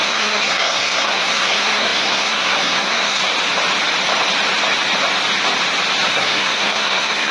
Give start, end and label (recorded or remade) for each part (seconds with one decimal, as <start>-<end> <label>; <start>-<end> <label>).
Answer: 0.0-3.2 remade; 3.2-6.1 recorded; 6.1-7.3 remade